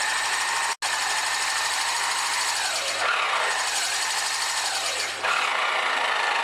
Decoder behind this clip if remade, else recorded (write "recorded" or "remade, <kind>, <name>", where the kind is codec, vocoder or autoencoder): recorded